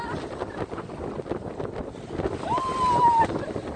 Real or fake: real